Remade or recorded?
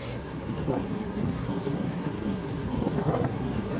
remade